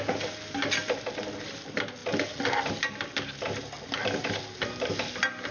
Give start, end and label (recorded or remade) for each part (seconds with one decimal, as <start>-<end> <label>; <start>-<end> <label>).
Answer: 0.0-5.5 recorded